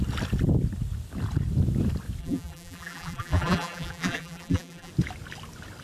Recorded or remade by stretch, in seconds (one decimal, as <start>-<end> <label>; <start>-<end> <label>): 0.0-2.2 recorded; 2.2-4.9 remade; 4.9-5.8 recorded